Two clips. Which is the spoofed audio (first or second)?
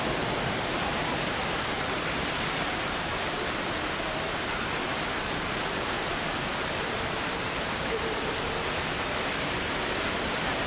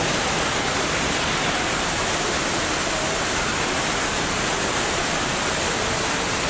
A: first